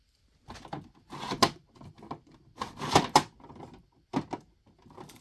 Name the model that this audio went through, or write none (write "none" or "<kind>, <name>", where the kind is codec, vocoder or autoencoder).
none